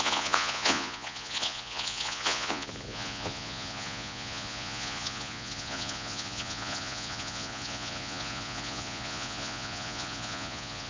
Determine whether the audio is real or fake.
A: fake